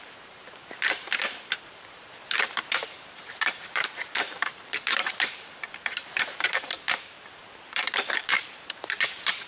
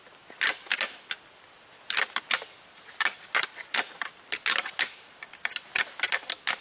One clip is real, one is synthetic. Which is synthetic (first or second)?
first